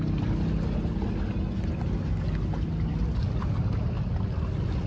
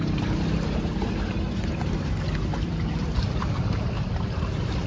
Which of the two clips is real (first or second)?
first